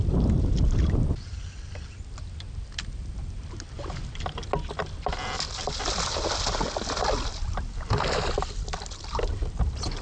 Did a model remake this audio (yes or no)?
no